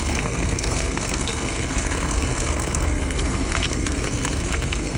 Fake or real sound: fake